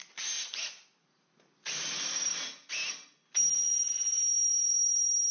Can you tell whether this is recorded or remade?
recorded